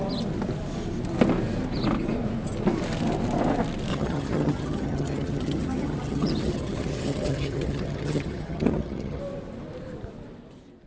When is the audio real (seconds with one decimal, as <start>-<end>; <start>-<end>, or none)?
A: 0.0-3.9; 9.2-10.9